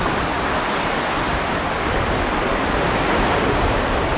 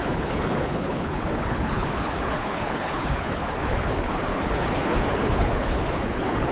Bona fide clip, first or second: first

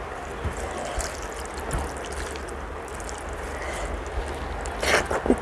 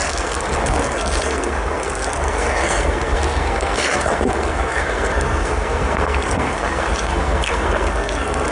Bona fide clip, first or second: first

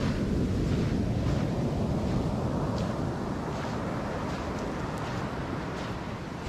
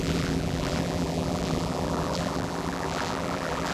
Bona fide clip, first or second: first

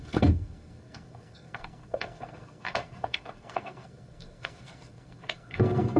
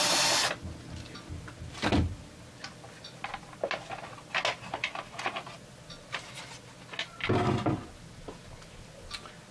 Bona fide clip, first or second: second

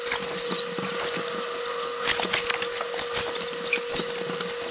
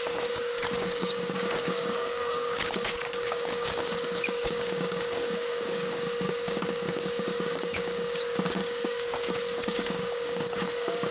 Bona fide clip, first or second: first